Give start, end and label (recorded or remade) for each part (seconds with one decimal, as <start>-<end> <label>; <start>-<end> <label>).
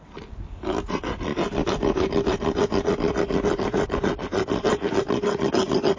0.0-6.0 recorded